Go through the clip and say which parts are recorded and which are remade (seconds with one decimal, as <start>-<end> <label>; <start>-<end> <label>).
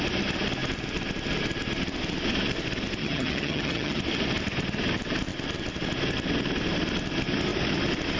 0.0-3.0 recorded; 3.0-4.0 remade; 4.0-8.2 recorded